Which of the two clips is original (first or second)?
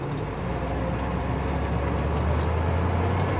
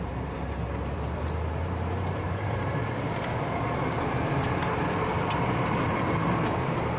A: first